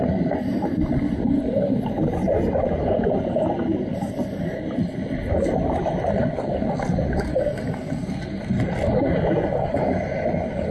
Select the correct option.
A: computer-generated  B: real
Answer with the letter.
B